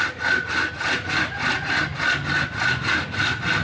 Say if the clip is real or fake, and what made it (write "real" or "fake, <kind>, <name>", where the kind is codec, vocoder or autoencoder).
real